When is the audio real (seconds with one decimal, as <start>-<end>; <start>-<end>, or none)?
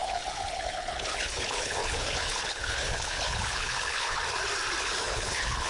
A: 4.2-4.8